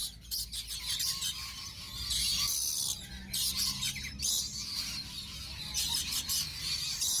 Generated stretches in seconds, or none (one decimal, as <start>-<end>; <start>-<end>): none